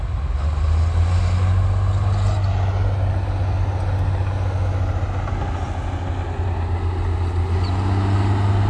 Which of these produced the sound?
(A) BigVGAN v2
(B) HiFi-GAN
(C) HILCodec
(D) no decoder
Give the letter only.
D